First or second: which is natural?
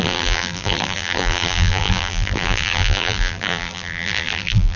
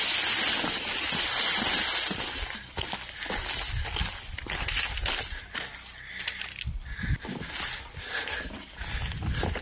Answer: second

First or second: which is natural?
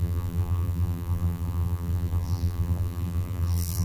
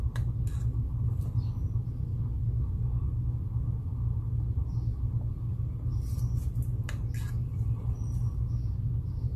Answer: second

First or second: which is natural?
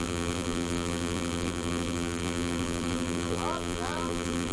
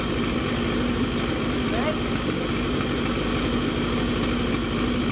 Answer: second